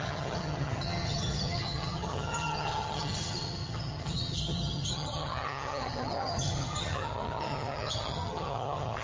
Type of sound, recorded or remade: remade